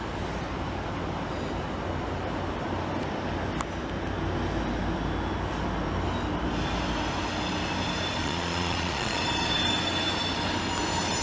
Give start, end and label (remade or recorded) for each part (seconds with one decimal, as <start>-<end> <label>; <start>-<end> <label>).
0.0-8.2 recorded; 8.2-9.2 remade; 9.2-11.2 recorded